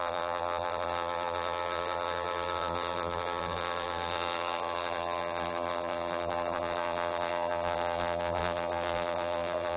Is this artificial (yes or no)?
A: yes